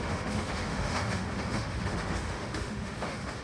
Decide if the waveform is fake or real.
fake